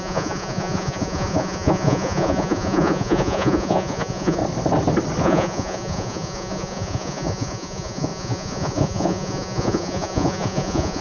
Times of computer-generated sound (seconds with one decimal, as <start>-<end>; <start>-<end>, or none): 0.0-4.4; 5.2-11.0